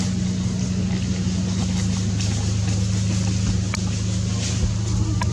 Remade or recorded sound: recorded